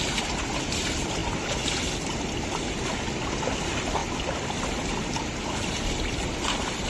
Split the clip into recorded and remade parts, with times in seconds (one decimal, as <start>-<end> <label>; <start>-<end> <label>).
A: 0.0-6.9 recorded